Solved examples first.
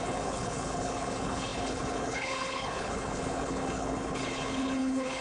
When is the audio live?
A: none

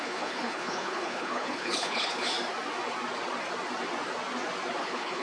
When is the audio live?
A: 2.3-4.8

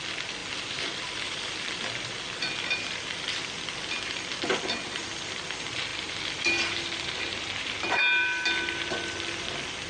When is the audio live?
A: none

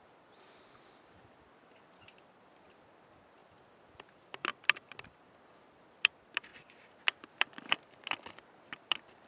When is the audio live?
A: 3.4-4.0

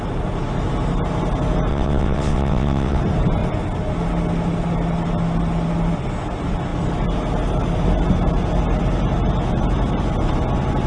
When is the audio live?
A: 0.0-1.7; 3.0-10.9

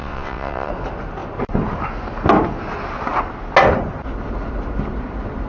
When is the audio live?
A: 0.7-5.5

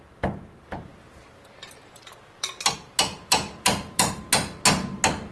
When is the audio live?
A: 0.0-0.9; 4.1-5.3

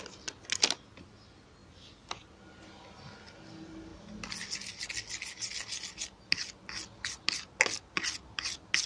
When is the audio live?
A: 0.0-8.9